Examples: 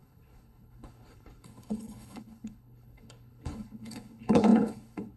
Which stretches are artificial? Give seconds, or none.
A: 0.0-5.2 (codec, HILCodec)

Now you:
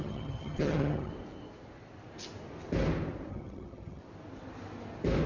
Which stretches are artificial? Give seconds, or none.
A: 0.0-1.1 (vocoder, HiFi-GAN); 3.3-4.0

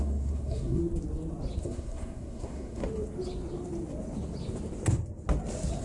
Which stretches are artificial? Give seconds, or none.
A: 0.0-0.8 (codec, SNAC); 1.6-2.8

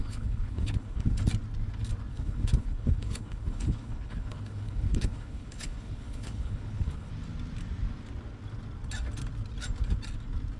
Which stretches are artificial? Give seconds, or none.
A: 0.0-1.2 (codec, HILCodec); 2.1-7.1

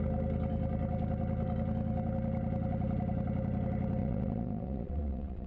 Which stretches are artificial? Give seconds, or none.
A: 4.0-5.5 (vocoder, WaveNeXt)